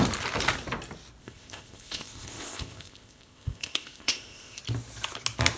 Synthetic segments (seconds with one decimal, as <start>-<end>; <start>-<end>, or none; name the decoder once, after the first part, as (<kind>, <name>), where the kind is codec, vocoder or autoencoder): 1.2-4.6 (codec, ZipCodec)